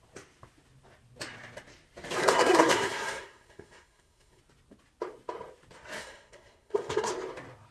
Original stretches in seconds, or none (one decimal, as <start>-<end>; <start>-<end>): 0.0-2.2; 4.4-6.0; 7.1-7.7

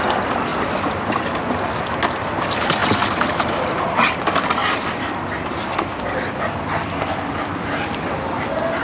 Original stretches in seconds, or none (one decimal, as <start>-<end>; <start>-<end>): 0.0-8.8

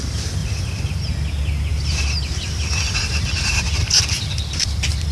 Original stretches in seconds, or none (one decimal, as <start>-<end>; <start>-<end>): 0.0-0.4; 1.0-1.7